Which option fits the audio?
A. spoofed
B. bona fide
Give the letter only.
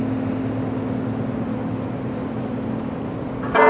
B